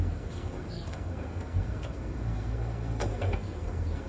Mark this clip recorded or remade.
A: remade